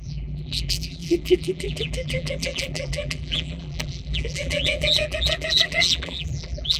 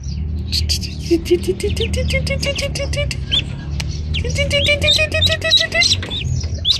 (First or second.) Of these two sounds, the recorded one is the second